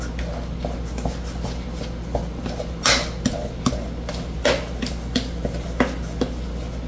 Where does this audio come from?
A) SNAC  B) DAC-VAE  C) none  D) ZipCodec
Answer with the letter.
C